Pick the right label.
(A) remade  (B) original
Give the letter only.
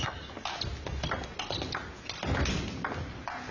B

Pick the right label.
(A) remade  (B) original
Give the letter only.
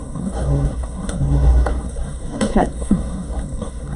A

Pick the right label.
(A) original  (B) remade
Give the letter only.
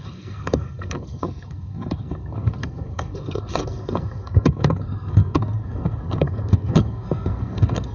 B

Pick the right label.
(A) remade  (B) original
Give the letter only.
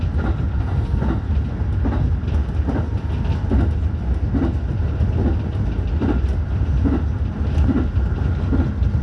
B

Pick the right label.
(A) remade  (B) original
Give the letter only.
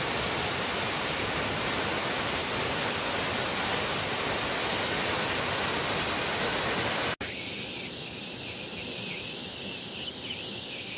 B